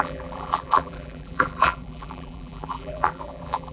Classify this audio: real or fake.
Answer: fake